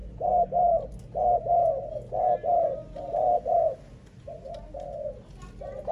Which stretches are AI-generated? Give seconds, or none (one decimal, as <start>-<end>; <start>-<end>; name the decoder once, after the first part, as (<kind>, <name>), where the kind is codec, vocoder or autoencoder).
none